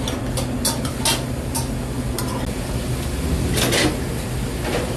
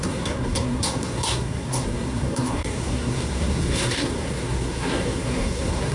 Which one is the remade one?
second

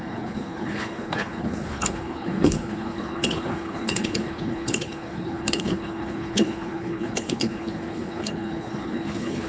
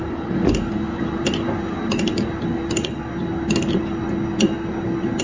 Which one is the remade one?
first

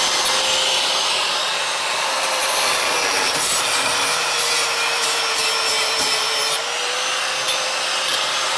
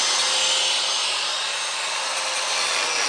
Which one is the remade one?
first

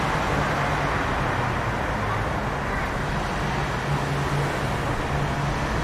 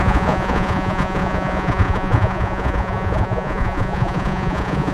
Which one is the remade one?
second